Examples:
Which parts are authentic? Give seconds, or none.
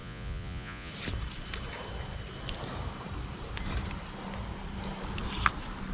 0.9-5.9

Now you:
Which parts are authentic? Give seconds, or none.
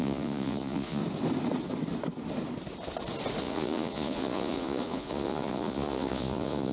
1.0-3.4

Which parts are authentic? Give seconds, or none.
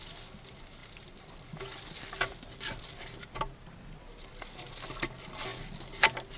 0.0-6.4